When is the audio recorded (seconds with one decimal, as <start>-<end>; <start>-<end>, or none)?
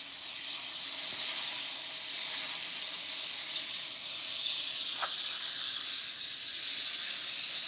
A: 0.0-7.7